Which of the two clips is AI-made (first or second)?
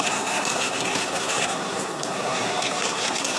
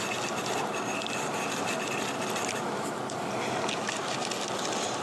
first